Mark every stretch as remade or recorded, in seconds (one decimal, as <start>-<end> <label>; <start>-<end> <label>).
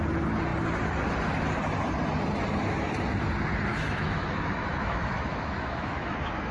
0.0-3.7 recorded; 3.7-6.5 remade